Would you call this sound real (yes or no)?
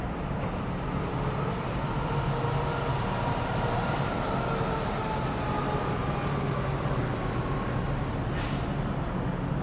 yes